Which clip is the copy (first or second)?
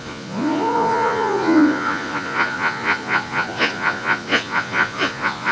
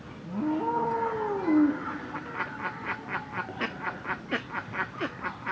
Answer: first